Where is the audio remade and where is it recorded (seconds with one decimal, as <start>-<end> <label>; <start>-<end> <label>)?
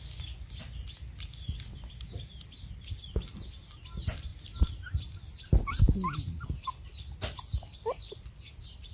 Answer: 0.0-8.9 recorded